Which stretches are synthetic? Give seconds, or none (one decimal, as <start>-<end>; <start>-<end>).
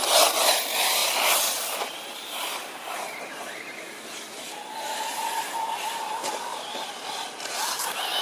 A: 1.0-4.7; 6.5-8.2